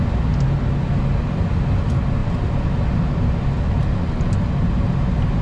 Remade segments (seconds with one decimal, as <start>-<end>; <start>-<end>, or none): none